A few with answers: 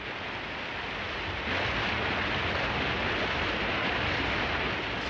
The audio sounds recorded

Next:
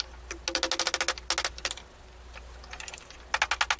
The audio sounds recorded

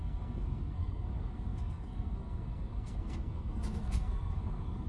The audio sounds remade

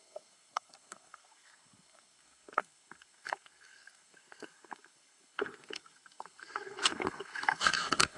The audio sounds remade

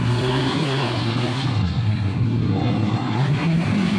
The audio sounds remade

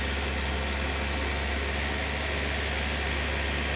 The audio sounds recorded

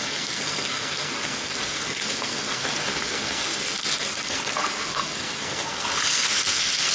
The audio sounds remade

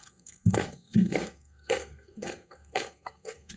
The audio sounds remade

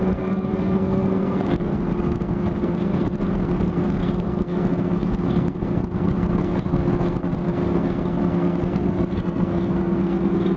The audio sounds remade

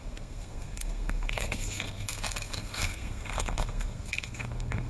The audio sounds remade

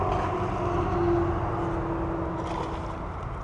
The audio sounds recorded